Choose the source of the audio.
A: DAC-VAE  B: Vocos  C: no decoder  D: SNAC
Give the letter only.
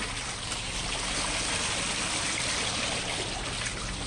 C